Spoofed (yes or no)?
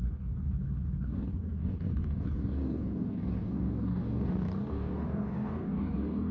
yes